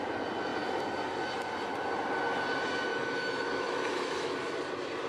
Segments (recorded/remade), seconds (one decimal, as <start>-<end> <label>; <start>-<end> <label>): 0.0-2.9 recorded; 2.9-4.3 remade; 4.3-5.1 recorded